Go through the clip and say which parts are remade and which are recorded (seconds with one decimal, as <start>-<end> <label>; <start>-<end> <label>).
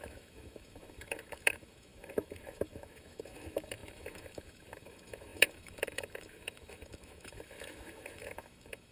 0.0-8.9 remade